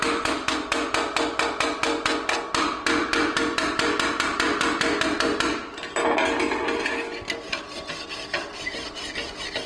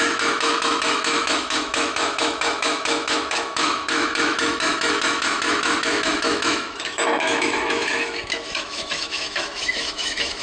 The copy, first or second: second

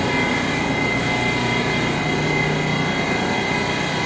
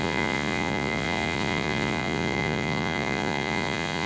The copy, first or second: second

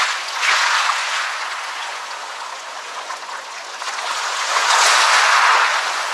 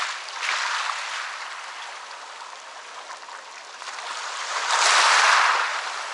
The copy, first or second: first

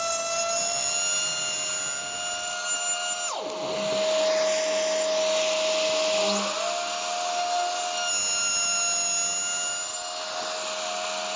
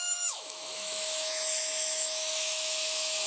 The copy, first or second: second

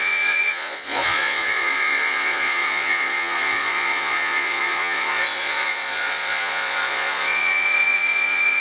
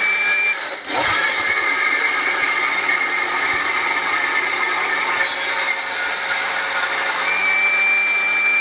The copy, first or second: first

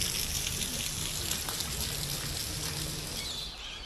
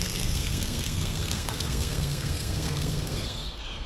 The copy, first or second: second